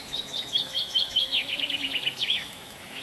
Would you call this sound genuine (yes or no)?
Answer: no